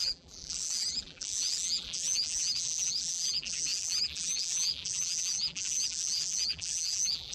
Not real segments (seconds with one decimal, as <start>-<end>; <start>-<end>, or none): 0.0-7.3